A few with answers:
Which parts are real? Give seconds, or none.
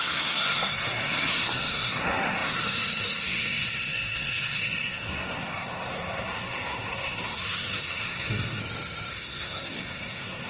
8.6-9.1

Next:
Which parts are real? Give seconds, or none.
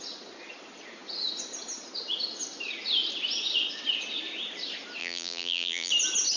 0.0-5.0; 5.9-6.4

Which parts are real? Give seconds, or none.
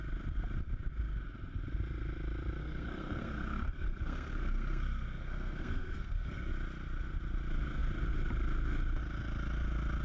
0.0-2.6; 6.5-10.0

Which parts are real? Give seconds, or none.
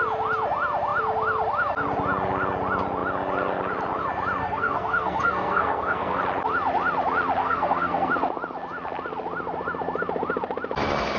0.0-4.4; 6.2-7.4; 8.1-11.2